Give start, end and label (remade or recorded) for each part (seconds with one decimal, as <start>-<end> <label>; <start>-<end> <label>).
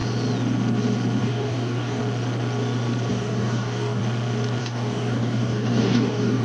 0.0-1.2 recorded; 1.2-2.0 remade; 2.0-3.1 recorded; 3.1-4.0 remade; 4.0-4.6 recorded; 4.6-6.4 remade